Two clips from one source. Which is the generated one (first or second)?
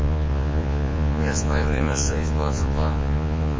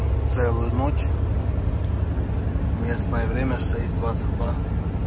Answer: first